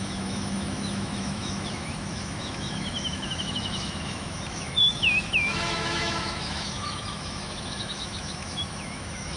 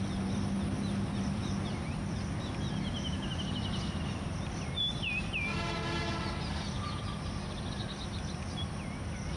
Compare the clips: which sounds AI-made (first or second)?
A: first